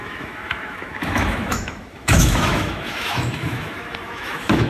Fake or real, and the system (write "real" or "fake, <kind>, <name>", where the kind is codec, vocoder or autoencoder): fake, autoencoder, DAC-VAE